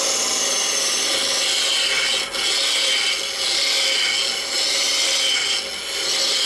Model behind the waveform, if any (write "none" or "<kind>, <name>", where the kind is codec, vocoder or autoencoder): none